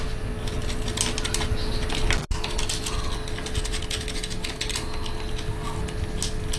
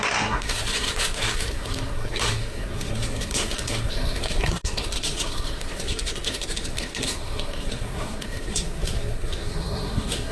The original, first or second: first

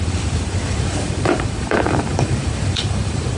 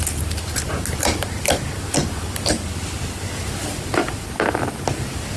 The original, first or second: second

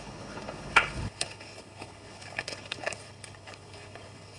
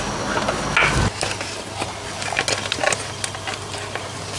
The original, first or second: second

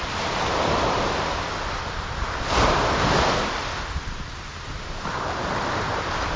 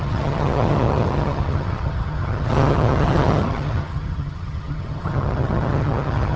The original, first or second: first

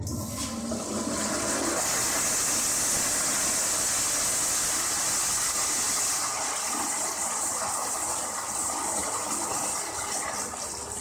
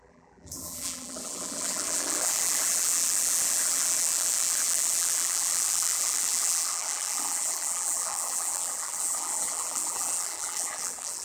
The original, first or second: first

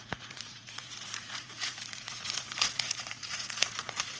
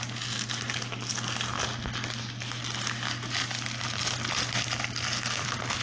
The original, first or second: second